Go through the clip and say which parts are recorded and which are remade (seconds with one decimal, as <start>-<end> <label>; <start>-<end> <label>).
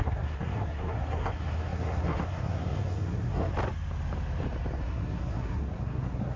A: 0.0-3.5 remade; 3.5-4.8 recorded; 4.8-6.4 remade